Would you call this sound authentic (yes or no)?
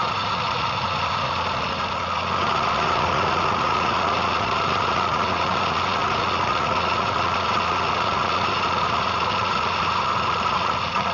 no